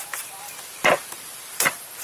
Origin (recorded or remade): remade